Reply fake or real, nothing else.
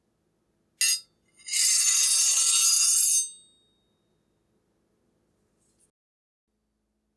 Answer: real